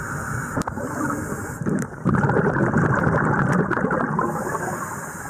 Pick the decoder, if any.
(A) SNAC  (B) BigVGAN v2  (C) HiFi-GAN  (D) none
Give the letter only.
D